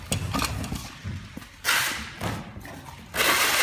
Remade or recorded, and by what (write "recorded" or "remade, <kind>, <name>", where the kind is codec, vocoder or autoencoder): recorded